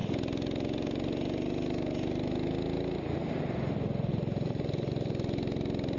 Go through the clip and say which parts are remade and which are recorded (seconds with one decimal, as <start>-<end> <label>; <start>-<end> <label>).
0.0-4.1 recorded; 4.1-4.9 remade; 4.9-6.0 recorded